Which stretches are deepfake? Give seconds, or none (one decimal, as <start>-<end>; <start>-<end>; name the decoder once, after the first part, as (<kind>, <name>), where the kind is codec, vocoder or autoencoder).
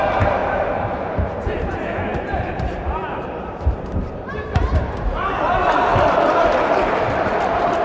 0.0-5.9 (vocoder, BigVGAN v2); 6.6-7.8